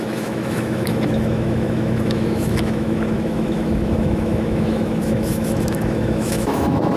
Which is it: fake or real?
fake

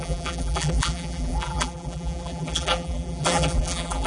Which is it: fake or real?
fake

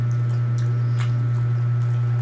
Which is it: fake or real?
real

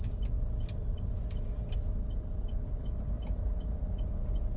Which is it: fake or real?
real